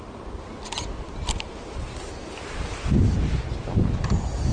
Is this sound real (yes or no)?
yes